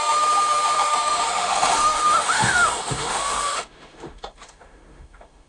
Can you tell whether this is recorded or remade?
remade